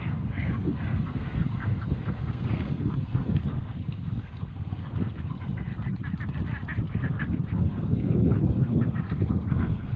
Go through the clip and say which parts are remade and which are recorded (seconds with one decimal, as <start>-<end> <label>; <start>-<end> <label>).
0.0-5.7 remade; 5.7-6.9 recorded; 6.9-10.0 remade